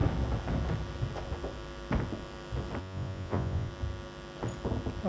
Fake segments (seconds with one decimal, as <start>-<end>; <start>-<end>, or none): 2.8-3.7